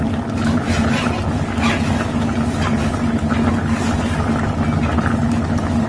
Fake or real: real